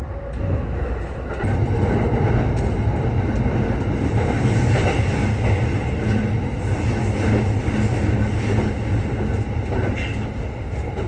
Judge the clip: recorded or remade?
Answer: recorded